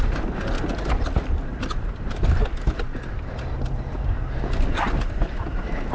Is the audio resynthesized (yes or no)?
no